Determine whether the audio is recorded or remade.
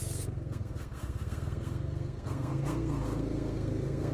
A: remade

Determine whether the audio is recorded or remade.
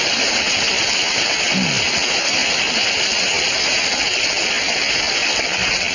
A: recorded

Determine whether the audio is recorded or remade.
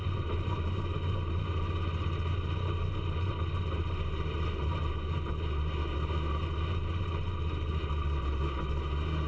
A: recorded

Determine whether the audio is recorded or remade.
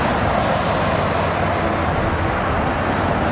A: recorded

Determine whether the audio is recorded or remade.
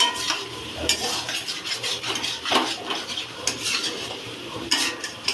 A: remade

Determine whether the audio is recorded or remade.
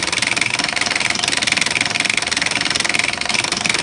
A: recorded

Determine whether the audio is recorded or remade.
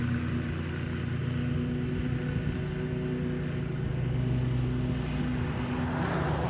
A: recorded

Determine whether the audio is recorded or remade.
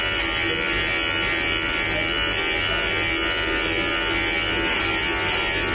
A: recorded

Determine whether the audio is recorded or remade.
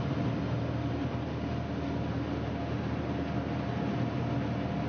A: recorded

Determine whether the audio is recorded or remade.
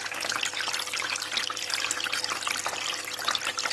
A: recorded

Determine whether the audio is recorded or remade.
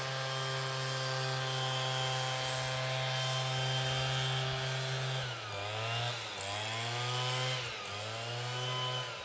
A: recorded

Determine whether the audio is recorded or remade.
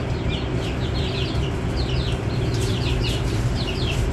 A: remade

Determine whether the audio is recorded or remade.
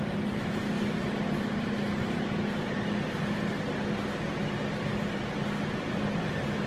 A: recorded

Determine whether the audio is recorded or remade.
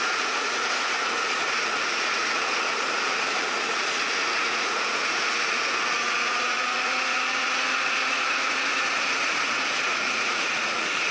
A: remade